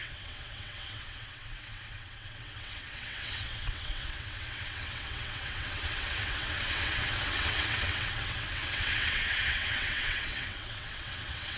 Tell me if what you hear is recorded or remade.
remade